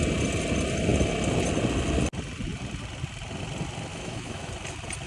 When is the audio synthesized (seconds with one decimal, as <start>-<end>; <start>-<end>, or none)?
3.9-4.5